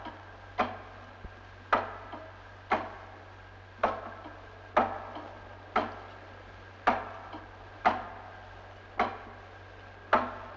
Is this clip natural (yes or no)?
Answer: yes